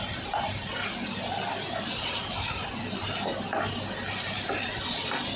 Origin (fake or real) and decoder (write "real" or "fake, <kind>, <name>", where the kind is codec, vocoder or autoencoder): real